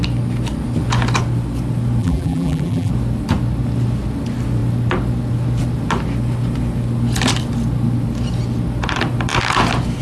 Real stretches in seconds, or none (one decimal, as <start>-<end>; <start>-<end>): 0.0-2.0; 2.9-10.0